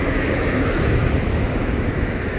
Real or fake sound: fake